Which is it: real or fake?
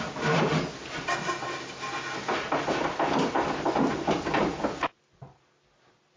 real